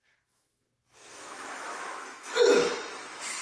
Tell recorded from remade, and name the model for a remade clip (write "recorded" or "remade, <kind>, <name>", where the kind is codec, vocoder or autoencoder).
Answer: remade, autoencoder, DAC-VAE